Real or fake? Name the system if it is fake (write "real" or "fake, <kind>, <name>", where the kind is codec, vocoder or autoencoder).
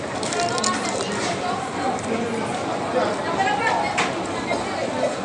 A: real